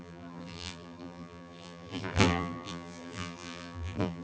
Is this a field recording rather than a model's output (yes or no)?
no